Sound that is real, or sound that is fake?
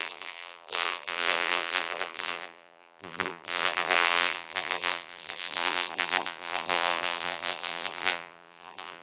fake